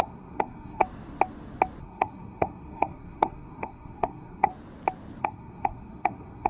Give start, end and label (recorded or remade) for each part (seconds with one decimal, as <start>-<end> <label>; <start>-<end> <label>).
0.0-0.8 remade; 0.8-1.8 recorded; 1.8-4.5 remade; 4.5-5.2 recorded; 5.2-6.5 remade